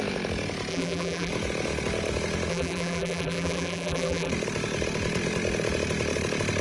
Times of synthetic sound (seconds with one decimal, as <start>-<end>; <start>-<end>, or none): 0.7-1.3; 2.5-4.3

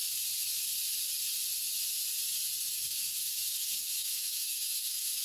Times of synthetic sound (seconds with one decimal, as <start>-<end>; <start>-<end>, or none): 2.6-5.2

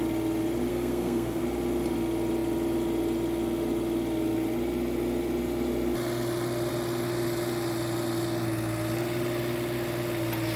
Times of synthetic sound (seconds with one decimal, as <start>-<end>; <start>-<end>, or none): 0.7-1.4

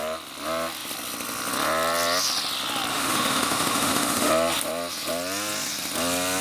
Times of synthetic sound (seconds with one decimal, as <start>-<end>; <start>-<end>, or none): 2.9-4.3

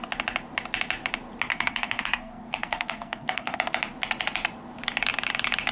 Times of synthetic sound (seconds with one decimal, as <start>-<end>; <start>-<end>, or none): 1.5-3.6

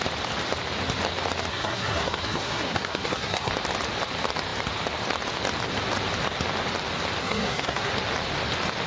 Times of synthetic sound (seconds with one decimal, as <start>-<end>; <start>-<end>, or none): 1.5-3.5; 7.2-7.9